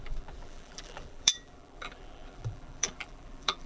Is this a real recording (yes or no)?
no